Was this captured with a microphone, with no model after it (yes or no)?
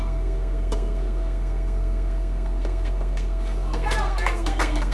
no